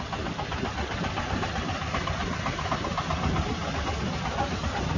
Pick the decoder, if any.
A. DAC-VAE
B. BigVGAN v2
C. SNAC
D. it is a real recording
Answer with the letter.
D